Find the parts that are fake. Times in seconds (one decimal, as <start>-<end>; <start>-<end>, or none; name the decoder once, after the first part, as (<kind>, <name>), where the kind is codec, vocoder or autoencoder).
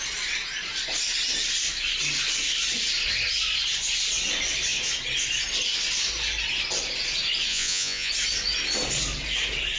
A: 7.5-8.1 (vocoder, Vocos)